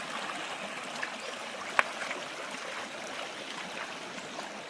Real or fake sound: real